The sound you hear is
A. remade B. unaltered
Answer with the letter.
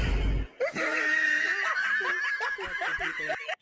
B